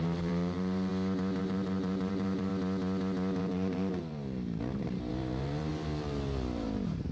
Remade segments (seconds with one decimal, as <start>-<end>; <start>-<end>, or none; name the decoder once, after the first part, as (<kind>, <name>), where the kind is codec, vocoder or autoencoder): 0.0-0.9 (vocoder, BigVGAN v2); 1.4-2.5; 3.4-7.1